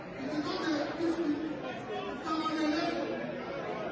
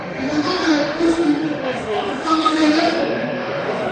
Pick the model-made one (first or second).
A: second